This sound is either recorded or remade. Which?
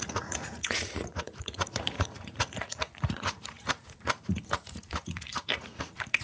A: remade